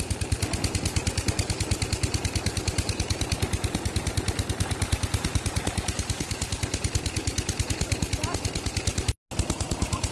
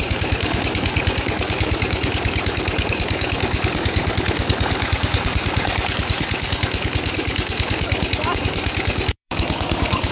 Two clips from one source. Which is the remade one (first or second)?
second